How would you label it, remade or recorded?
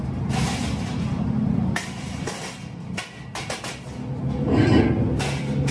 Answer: recorded